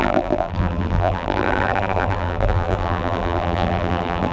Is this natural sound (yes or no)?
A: no